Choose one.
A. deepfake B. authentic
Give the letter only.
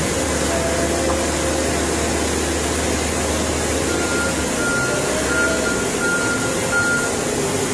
B